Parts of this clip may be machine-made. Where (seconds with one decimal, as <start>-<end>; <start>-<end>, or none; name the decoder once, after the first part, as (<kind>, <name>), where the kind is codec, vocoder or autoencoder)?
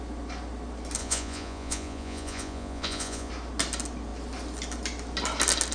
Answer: 1.0-3.3 (vocoder, Vocos)